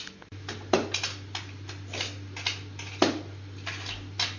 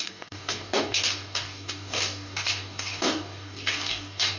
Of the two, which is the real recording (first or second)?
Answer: first